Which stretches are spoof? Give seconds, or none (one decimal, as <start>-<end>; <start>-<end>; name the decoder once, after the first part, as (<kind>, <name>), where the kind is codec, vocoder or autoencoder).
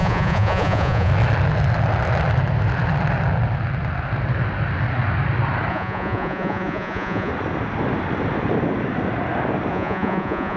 0.0-1.1 (vocoder, Vocos); 5.7-7.3; 9.7-10.6